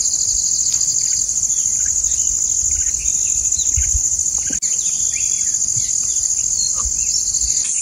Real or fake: real